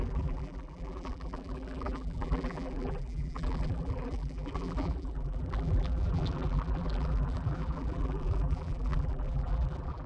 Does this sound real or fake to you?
fake